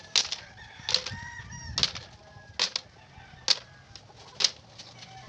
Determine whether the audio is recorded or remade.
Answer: recorded